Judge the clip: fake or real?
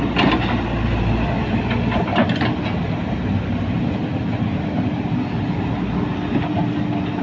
real